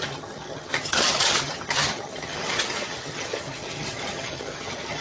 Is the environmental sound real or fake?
fake